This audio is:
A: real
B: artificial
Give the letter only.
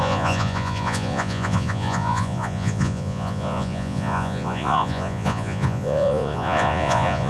B